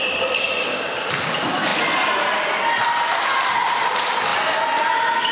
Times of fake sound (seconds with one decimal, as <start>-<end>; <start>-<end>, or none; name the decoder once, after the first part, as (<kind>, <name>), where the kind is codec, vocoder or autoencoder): none